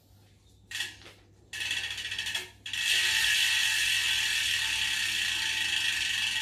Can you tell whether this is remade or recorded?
recorded